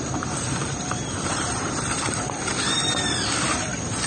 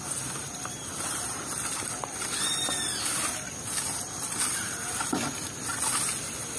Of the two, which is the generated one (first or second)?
first